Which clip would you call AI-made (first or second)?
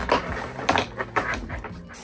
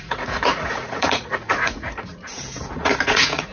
second